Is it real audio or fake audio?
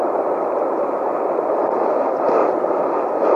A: real